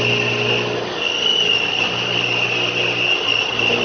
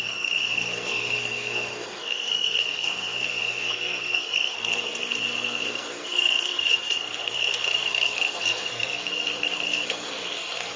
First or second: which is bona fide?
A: first